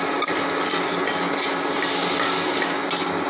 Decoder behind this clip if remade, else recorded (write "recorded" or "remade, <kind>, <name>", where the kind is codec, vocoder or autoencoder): recorded